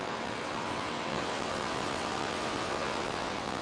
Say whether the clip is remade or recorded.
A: remade